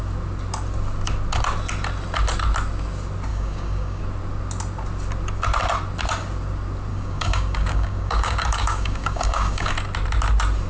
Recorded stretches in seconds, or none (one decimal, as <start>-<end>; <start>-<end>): 0.0-3.3; 4.0-6.9; 9.7-10.7